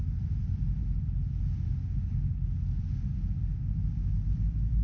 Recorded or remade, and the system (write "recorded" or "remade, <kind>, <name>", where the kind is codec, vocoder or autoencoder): recorded